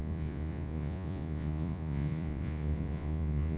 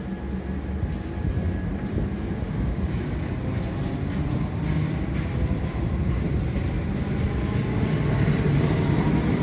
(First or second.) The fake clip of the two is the first